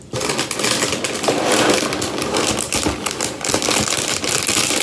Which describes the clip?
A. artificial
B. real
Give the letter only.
B